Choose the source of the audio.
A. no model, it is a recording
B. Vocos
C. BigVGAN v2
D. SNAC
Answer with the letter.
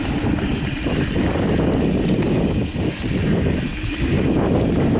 C